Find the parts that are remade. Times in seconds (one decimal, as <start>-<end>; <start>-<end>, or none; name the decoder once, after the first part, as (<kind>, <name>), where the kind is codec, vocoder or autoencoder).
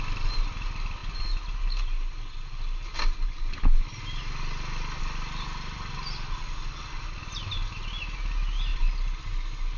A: none